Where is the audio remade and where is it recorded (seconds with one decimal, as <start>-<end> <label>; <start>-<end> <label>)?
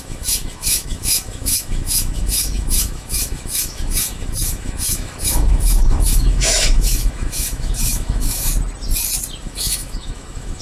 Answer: 0.0-8.5 remade; 8.5-9.4 recorded; 9.4-10.6 remade